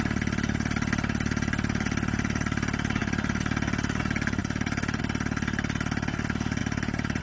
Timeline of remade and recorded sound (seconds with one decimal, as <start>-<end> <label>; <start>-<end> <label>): 0.0-4.4 recorded; 4.4-5.0 remade; 5.0-6.6 recorded; 6.6-7.2 remade

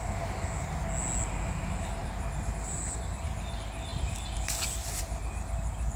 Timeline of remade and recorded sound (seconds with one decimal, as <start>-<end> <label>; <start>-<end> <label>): 0.0-2.0 recorded; 2.0-3.2 remade; 3.2-6.0 recorded

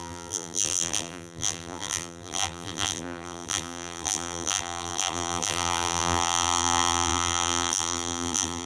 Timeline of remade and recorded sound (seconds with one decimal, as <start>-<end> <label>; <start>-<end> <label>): 0.0-8.7 remade